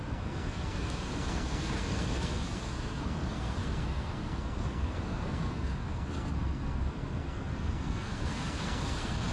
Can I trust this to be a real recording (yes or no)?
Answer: no